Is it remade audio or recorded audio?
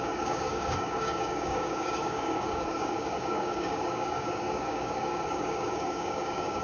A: remade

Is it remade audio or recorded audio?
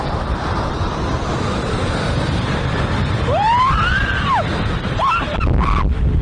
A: remade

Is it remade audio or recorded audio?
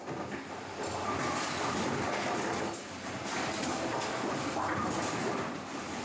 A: recorded